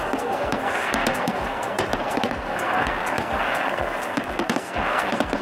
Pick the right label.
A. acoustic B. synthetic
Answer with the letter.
B